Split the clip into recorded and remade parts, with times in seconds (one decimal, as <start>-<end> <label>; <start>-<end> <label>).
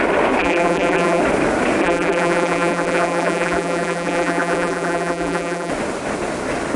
0.0-0.4 recorded; 0.4-1.2 remade; 1.2-1.8 recorded; 1.8-5.7 remade; 5.7-6.8 recorded